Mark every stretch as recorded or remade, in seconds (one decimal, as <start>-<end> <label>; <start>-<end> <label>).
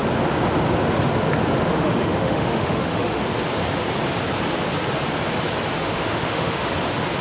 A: 0.0-1.7 recorded; 1.7-3.2 remade; 3.2-5.8 recorded; 5.8-6.7 remade; 6.7-7.2 recorded